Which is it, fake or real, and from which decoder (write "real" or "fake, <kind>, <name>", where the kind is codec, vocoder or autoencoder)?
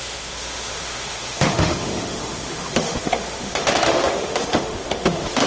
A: fake, autoencoder, DAC-VAE